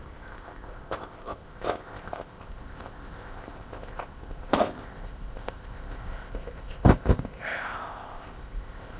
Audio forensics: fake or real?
fake